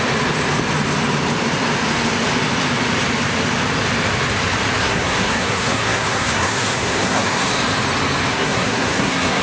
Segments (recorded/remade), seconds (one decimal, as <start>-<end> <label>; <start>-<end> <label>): 0.0-4.8 recorded; 4.8-7.5 remade; 7.5-8.3 recorded; 8.3-9.4 remade